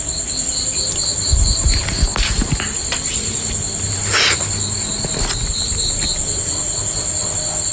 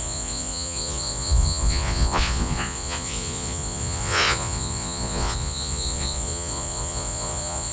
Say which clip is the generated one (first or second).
second